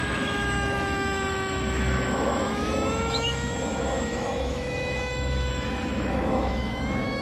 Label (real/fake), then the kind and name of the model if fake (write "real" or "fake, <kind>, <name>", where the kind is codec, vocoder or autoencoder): fake, autoencoder, DAC-VAE